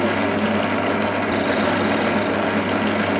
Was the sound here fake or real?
real